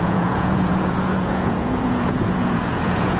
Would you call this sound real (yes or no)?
no